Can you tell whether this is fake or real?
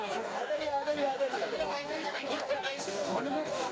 fake